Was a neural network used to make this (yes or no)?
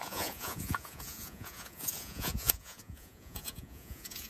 yes